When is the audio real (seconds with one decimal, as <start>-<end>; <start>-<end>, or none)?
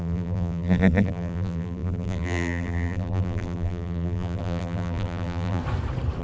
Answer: 5.6-6.2